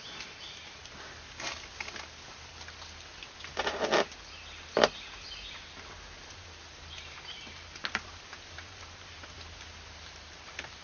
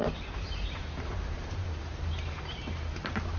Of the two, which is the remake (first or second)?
second